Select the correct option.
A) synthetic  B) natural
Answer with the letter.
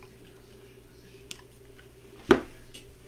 B